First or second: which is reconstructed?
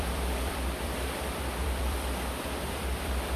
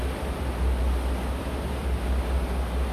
first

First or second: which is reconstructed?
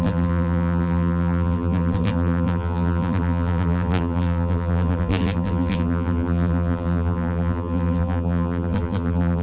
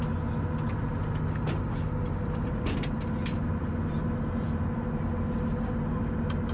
first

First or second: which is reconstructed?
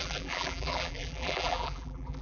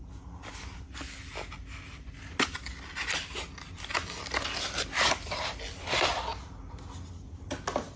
first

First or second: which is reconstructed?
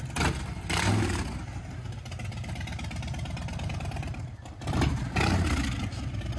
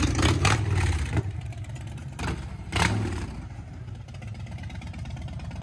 second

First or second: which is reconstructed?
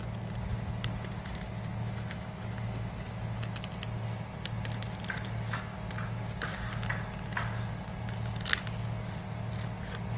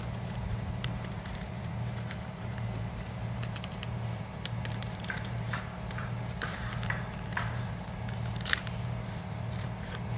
second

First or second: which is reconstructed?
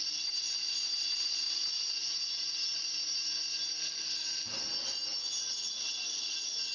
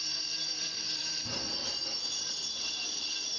second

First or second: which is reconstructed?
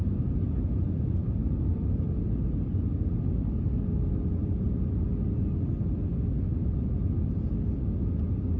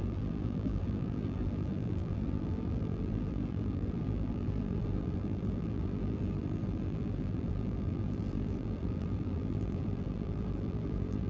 second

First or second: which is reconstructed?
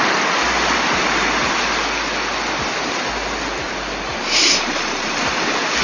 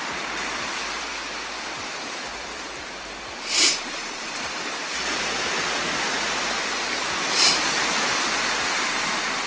second